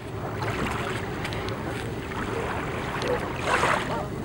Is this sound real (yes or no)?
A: yes